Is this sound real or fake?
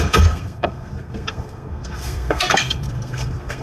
fake